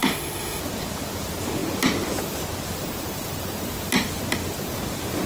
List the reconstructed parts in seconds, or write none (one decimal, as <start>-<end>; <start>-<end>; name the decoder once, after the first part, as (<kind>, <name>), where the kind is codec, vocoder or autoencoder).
0.0-0.6 (autoencoder, DAC-VAE)

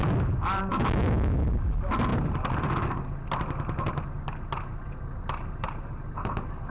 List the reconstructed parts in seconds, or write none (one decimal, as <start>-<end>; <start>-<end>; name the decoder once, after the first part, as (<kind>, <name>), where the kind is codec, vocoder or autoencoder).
0.7-1.5 (autoencoder, DAC-VAE)

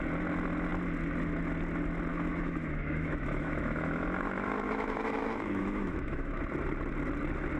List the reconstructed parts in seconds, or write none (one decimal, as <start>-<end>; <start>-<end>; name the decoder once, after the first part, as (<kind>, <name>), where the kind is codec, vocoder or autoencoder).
2.1-6.4 (autoencoder, DAC-VAE)